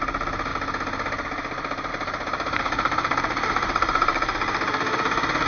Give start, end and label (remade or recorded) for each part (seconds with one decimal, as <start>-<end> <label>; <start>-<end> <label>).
0.0-0.5 remade; 0.5-1.9 recorded; 1.9-4.1 remade; 4.1-5.5 recorded